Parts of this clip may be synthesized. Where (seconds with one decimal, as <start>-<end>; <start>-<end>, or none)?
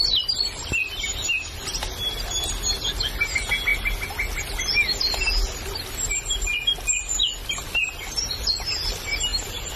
none